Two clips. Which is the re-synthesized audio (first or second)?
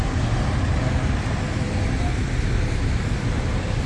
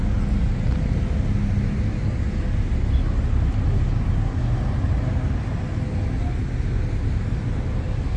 first